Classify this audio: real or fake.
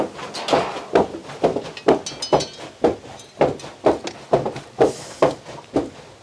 real